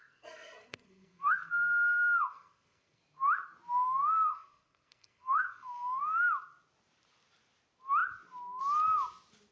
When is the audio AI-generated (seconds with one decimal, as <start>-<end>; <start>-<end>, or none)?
0.0-3.0; 4.2-6.0

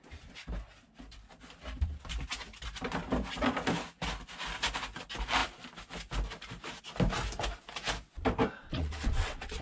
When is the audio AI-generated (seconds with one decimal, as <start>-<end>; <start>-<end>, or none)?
8.7-9.6

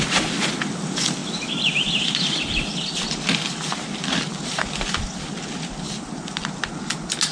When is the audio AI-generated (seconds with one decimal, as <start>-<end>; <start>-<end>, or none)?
none

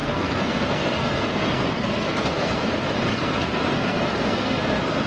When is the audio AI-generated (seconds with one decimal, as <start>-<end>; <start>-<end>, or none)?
0.0-2.7; 3.1-5.1